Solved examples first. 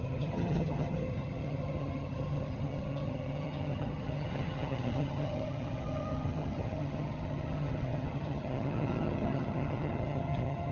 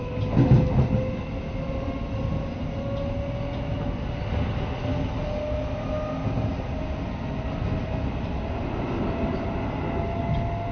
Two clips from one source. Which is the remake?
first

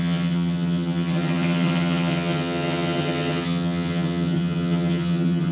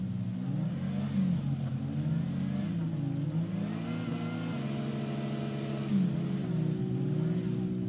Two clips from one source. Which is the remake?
first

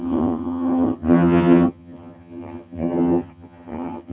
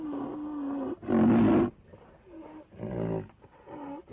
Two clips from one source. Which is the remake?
first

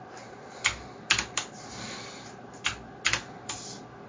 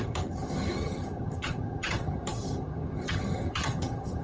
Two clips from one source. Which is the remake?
second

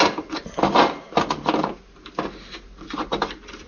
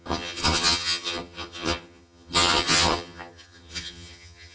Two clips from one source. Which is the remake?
second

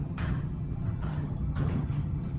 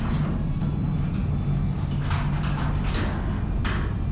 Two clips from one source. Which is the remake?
first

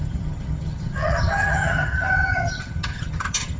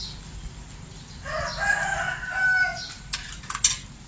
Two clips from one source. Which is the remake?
first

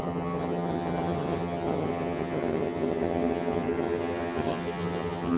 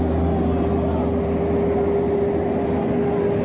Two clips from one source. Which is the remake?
first